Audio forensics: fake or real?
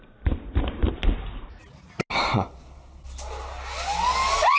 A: real